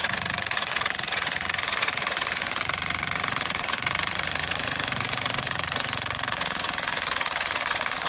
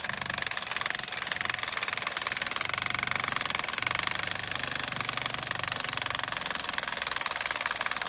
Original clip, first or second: second